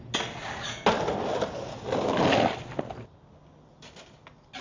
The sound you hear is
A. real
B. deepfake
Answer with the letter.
A